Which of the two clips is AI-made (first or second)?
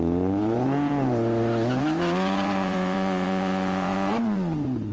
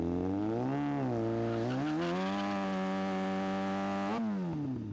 first